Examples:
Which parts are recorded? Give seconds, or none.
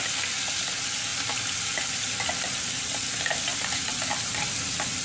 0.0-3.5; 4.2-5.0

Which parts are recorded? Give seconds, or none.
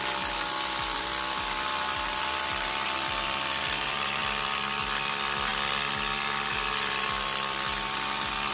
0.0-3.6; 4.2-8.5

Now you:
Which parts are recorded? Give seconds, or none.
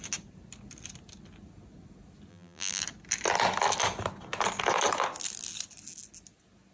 0.0-2.3; 2.8-6.7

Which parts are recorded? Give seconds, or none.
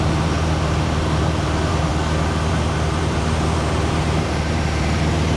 1.9-2.5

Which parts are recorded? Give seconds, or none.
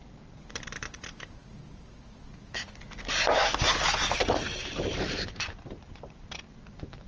1.4-4.2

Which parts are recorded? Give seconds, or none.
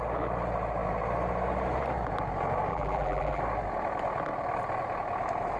0.0-2.7; 3.4-5.6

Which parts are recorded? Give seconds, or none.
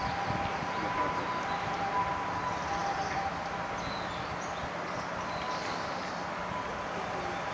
0.0-0.5; 2.1-7.5